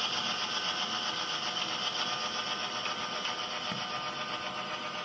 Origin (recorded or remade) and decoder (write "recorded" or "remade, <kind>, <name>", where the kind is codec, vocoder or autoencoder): recorded